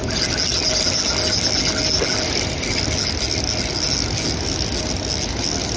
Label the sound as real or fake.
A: real